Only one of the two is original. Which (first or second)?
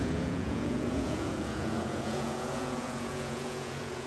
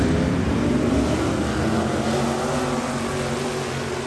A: second